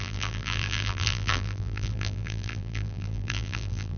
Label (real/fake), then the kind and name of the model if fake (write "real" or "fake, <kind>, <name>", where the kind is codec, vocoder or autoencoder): fake, vocoder, BigVGAN v2